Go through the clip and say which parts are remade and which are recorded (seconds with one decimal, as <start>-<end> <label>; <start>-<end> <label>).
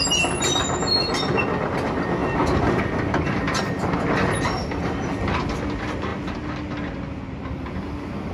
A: 0.0-8.3 recorded